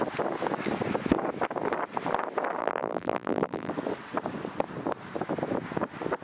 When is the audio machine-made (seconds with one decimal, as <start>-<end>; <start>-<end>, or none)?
2.6-3.7